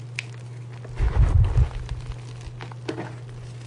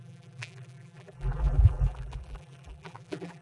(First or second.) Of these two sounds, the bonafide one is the first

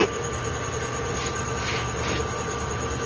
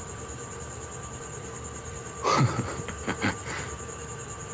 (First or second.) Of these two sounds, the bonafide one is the first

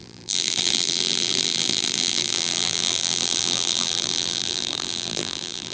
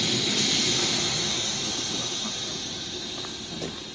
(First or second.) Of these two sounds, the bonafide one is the second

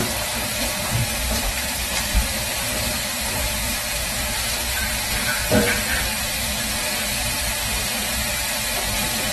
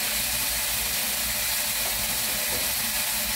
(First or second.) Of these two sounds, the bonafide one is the second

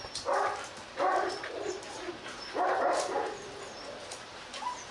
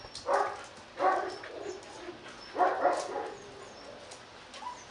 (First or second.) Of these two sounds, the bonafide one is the second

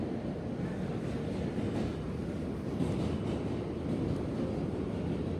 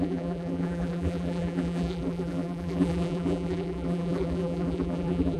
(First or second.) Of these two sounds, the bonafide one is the first